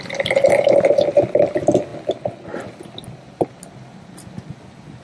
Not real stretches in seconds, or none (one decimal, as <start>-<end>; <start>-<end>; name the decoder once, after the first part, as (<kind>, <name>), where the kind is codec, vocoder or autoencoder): none

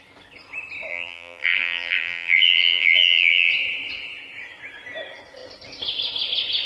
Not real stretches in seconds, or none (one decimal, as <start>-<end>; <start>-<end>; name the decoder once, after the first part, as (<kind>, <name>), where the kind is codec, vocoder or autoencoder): 0.9-3.5 (vocoder, BigVGAN v2)

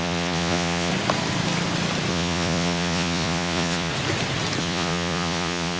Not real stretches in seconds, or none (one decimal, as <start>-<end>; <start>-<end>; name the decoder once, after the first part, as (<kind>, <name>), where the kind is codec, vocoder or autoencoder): 0.0-0.9 (vocoder, Vocos); 2.1-3.9; 4.6-5.8